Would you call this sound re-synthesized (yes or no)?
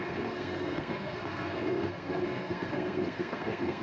yes